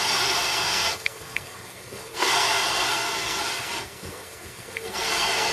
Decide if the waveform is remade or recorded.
remade